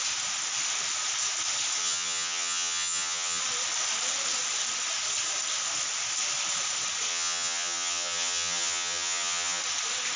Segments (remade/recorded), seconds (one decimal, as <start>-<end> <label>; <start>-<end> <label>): 0.0-1.8 recorded; 1.8-3.4 remade; 3.4-7.1 recorded; 7.1-9.6 remade; 9.6-10.2 recorded